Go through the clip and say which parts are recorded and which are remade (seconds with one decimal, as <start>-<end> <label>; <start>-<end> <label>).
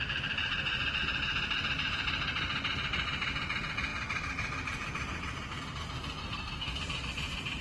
0.0-6.2 recorded; 6.2-6.8 remade; 6.8-7.6 recorded